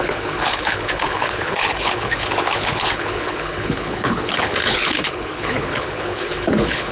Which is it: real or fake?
fake